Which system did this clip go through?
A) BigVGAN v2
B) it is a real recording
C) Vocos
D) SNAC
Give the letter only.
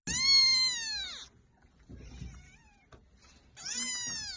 B